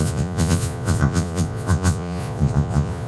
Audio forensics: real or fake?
fake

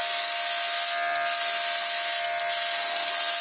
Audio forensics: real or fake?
real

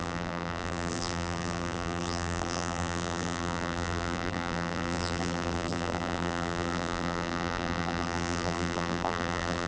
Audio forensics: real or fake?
fake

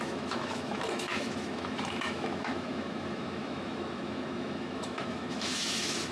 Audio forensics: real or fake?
fake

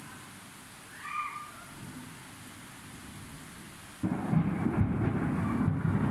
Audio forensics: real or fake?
real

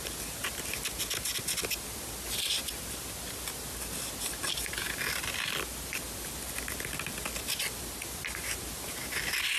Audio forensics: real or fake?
real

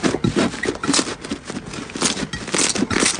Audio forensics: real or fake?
real